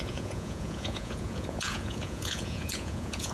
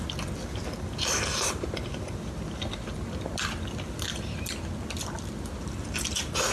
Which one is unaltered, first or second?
second